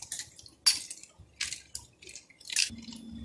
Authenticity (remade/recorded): recorded